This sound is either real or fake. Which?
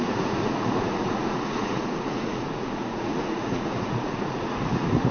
fake